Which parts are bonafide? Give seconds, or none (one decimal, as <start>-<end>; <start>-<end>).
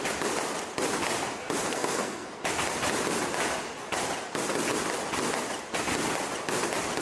0.0-1.6; 2.4-7.0